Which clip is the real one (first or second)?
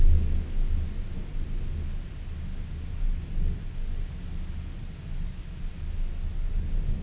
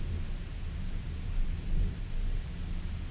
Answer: first